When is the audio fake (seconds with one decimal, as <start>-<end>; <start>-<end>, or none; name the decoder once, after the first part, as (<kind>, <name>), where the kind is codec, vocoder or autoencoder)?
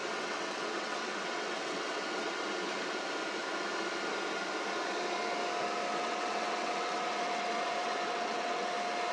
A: 0.0-2.3 (vocoder, WaveNeXt); 5.9-8.7